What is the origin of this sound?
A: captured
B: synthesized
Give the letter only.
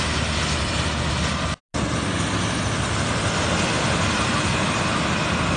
A